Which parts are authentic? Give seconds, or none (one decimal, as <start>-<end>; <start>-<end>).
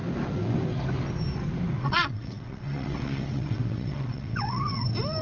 0.0-1.8; 4.8-5.2